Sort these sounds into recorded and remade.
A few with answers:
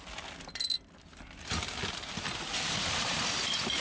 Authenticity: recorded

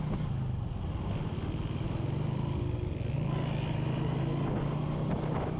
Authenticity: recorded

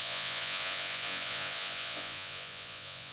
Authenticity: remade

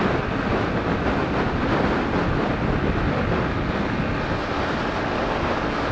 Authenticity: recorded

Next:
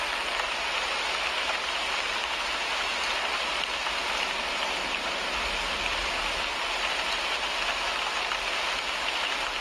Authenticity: recorded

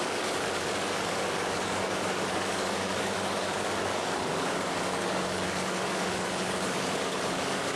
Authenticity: remade